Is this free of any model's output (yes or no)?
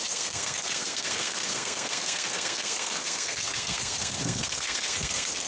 no